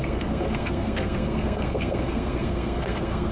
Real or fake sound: fake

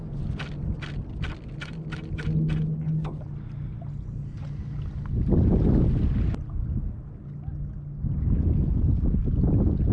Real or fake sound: real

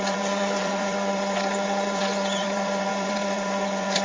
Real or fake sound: fake